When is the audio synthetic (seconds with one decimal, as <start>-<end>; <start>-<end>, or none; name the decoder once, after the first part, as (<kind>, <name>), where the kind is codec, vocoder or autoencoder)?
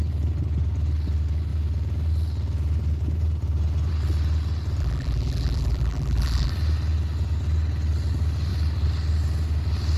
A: 4.8-6.5 (vocoder, BigVGAN v2)